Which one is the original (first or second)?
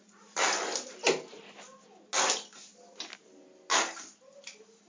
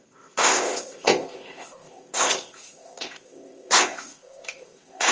first